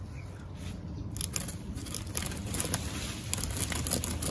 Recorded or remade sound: recorded